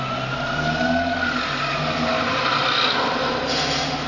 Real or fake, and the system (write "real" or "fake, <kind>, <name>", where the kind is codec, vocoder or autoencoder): real